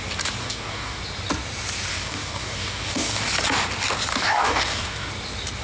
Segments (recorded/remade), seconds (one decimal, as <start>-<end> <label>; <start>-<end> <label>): 0.0-0.4 recorded; 0.4-1.0 remade; 1.0-1.9 recorded; 1.9-3.3 remade; 3.3-4.1 recorded; 4.1-5.1 remade; 5.1-5.6 recorded